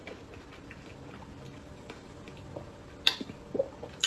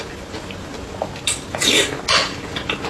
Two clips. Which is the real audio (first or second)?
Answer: second